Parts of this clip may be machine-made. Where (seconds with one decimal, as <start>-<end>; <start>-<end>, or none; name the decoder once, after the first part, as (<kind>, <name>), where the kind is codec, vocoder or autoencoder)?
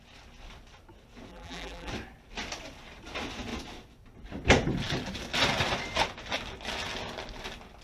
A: 1.3-1.9 (vocoder, BigVGAN v2)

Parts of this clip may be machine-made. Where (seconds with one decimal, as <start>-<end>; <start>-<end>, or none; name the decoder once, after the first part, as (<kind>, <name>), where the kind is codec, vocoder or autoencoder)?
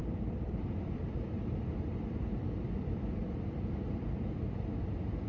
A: 0.0-3.2 (vocoder, BigVGAN v2)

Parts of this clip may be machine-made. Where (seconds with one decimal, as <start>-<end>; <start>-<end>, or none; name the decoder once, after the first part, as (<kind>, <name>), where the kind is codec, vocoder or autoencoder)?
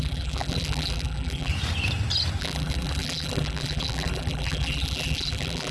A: 0.0-1.5 (vocoder, BigVGAN v2); 2.4-5.7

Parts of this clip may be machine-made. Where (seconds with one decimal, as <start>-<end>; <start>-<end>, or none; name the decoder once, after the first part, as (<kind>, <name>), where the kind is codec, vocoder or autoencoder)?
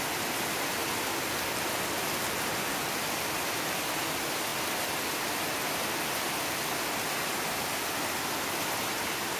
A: none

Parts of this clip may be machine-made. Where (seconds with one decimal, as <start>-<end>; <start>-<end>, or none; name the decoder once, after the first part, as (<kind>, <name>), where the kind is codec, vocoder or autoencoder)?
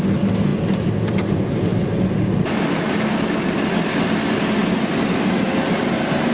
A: none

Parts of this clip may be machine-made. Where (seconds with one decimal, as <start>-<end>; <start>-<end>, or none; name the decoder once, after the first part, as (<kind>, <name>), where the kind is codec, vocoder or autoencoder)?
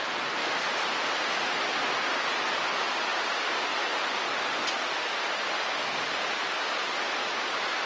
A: 0.4-0.9 (vocoder, BigVGAN v2); 3.1-6.6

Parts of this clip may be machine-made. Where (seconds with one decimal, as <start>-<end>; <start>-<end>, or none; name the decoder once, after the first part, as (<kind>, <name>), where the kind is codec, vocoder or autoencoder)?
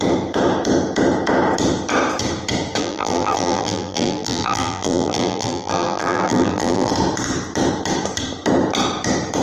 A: 2.8-6.9 (vocoder, BigVGAN v2)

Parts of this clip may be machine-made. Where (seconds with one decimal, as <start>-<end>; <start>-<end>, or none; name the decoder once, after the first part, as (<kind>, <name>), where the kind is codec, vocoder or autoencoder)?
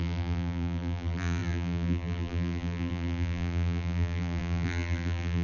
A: 0.0-5.4 (vocoder, BigVGAN v2)